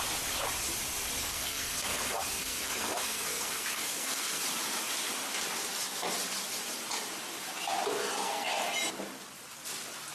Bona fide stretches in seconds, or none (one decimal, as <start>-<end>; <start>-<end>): 0.0-1.2; 4.4-8.0; 8.5-10.1

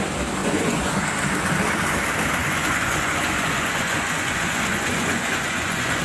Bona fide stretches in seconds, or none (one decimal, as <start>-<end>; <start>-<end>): 0.0-0.4; 1.0-2.4